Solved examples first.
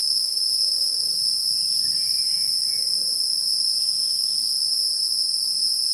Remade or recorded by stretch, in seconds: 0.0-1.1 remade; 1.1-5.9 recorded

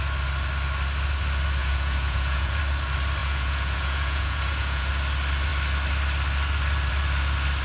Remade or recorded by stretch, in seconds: 0.0-1.6 recorded; 1.6-2.6 remade; 2.6-3.2 recorded; 3.2-4.9 remade; 4.9-7.6 recorded